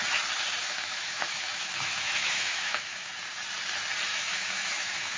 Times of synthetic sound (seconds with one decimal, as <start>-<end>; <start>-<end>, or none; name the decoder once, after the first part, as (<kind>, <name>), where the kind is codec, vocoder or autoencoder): 0.6-3.1 (autoencoder, DAC-VAE); 4.1-5.2